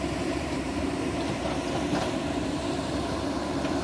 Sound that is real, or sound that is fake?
fake